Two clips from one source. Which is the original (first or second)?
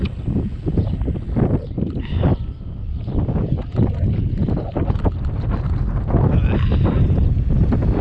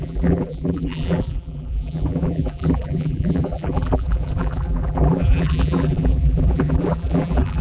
first